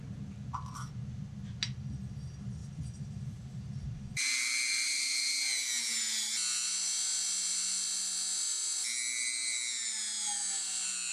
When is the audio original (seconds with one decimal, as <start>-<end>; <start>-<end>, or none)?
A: 0.0-2.6; 5.8-7.4; 8.0-11.1